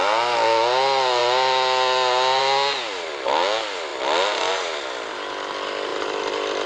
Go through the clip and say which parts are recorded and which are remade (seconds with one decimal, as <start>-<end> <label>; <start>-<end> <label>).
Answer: 0.0-6.7 recorded